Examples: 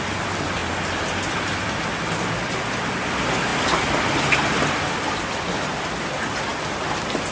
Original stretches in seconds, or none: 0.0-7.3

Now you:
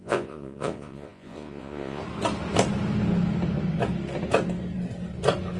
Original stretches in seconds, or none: 2.0-5.6